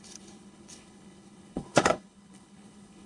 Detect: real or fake fake